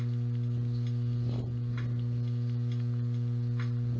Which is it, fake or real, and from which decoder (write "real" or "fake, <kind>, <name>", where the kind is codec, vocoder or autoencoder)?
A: real